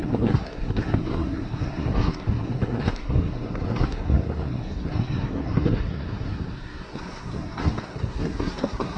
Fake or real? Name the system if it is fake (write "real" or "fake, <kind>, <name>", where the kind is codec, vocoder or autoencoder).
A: fake, codec, SNAC